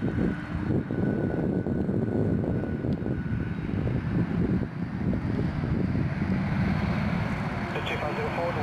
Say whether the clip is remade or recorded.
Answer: recorded